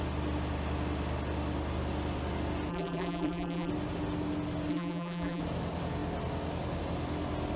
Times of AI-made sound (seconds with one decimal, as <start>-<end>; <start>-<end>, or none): 2.7-3.7; 4.7-5.4

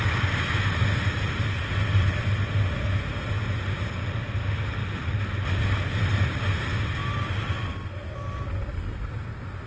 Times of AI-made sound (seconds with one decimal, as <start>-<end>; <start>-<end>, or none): none

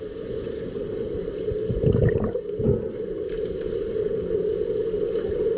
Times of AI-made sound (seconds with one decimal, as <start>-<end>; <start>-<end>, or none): none

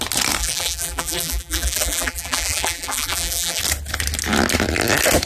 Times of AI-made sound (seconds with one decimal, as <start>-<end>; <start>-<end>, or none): 0.4-3.6

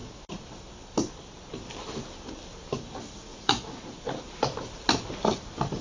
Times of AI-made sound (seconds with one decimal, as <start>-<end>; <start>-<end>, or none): 3.3-4.0

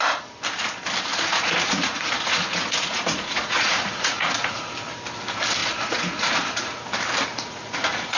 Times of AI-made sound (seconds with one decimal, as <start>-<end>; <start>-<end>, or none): 1.1-4.7; 5.6-6.8; 7.3-8.2

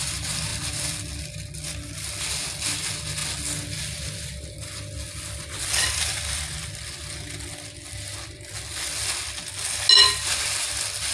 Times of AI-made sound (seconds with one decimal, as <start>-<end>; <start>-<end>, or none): none

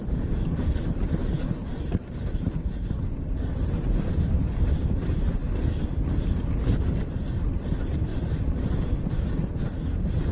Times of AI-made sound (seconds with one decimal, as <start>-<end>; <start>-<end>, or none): 0.0-1.2; 1.7-5.4; 7.5-8.1; 9.9-10.3